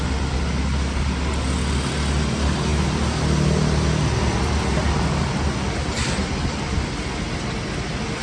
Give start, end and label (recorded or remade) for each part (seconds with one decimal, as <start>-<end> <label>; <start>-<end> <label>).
0.0-8.2 recorded